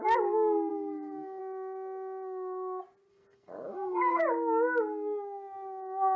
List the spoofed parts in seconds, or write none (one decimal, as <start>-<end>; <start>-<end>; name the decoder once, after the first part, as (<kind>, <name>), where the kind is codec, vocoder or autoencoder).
0.7-1.4 (codec, SNAC); 3.1-4.2